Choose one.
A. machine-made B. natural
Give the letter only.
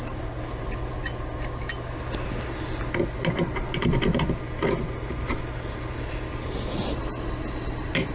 B